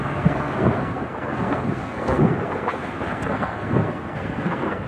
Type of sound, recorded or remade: remade